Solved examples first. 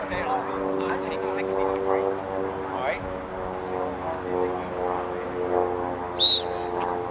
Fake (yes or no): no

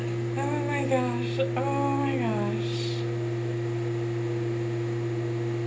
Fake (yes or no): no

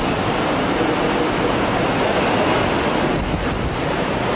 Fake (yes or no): no